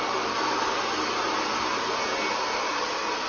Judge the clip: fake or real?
real